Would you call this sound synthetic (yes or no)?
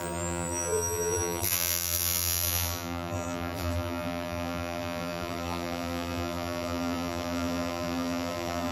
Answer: yes